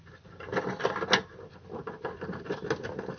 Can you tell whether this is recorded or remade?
recorded